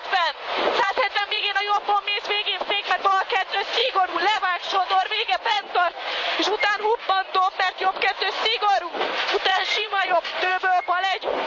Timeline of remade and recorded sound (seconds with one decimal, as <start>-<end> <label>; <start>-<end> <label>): 0.0-1.6 remade; 1.6-3.8 recorded; 3.8-6.3 remade; 6.3-9.5 recorded; 9.5-10.5 remade; 10.5-11.5 recorded